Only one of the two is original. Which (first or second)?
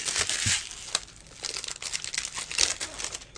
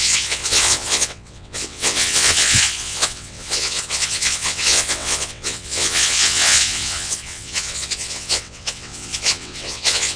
first